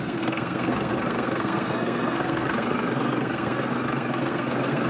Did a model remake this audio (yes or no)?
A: yes